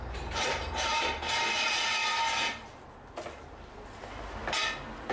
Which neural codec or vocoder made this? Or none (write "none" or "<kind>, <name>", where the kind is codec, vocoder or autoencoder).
none